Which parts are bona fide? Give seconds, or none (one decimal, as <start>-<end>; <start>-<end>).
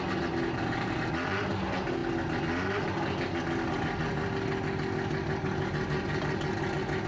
0.0-7.1